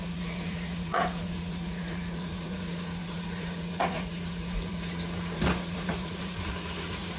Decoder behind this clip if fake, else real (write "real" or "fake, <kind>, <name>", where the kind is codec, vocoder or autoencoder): fake, vocoder, Vocos